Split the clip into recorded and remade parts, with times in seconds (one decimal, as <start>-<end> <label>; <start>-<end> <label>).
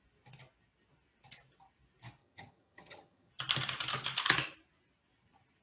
0.0-2.2 recorded; 2.2-3.3 remade; 3.3-5.6 recorded